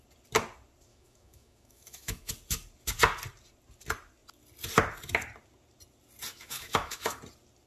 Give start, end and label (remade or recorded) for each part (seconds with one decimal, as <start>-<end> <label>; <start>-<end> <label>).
0.0-0.9 recorded; 0.9-2.3 remade; 2.3-6.3 recorded; 6.3-7.2 remade; 7.2-7.7 recorded